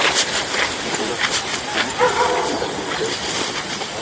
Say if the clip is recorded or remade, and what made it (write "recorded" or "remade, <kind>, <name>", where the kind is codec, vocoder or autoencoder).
recorded